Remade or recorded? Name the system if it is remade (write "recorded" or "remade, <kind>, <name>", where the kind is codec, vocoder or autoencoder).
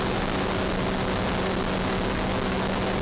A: recorded